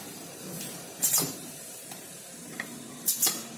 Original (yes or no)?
no